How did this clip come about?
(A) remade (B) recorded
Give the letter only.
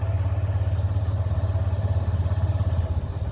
B